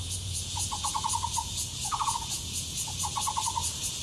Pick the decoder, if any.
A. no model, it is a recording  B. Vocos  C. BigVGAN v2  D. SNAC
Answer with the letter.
B